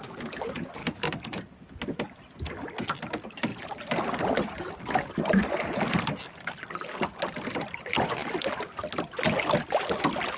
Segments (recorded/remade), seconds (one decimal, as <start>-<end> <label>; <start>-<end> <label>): 0.0-0.8 recorded; 0.8-1.4 remade; 1.4-10.4 recorded